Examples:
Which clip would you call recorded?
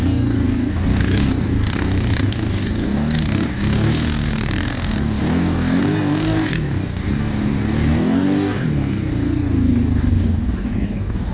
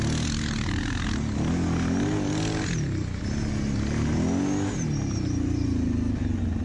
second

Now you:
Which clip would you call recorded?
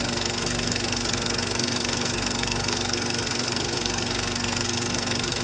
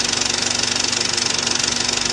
second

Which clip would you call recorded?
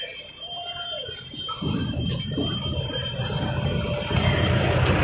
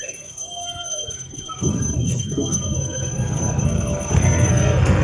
first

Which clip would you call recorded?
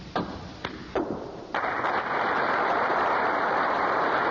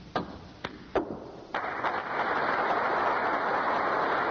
second